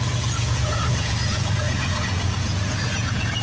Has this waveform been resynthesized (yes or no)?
yes